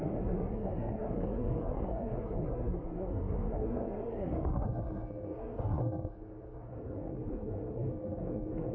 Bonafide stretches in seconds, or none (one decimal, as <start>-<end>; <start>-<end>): none